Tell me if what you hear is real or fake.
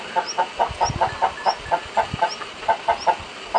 real